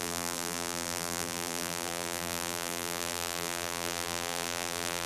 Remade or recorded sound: remade